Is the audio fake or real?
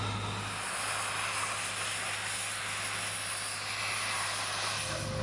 real